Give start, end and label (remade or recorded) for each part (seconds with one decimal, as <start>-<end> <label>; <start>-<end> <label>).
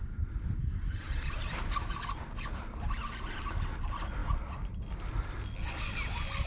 0.0-6.5 recorded